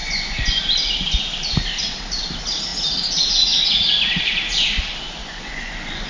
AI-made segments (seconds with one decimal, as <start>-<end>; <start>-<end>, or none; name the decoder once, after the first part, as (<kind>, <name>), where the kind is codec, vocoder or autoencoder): 0.0-0.6 (vocoder, Vocos); 5.2-6.1